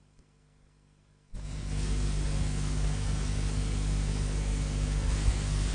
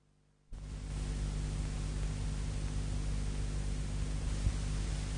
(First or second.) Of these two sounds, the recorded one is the second